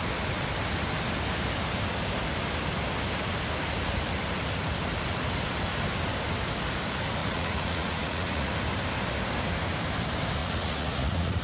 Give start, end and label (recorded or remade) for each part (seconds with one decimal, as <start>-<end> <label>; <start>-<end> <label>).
0.0-7.2 recorded; 7.2-8.5 remade; 8.5-10.4 recorded; 10.4-11.4 remade